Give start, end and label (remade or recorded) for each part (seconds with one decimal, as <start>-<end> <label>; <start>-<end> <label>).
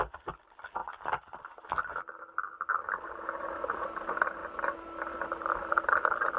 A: 0.0-6.4 recorded